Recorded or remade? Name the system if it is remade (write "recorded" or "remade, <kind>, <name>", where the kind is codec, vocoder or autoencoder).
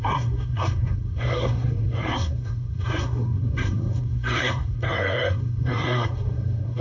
remade, codec, SNAC